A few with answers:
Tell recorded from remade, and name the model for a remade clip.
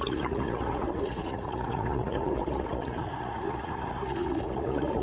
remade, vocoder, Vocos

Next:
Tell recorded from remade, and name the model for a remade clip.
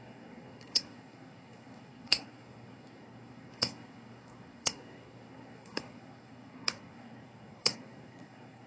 remade, codec, SNAC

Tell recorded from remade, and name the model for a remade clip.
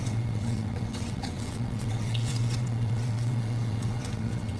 remade, vocoder, WaveNeXt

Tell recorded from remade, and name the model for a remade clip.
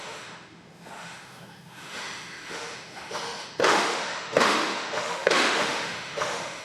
remade, autoencoder, DAC-VAE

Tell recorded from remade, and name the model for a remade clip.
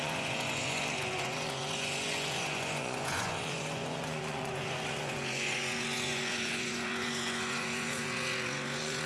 remade, vocoder, Vocos